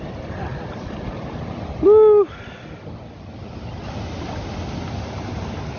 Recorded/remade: recorded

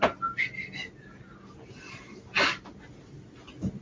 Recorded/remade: recorded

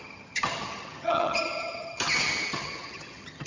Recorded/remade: remade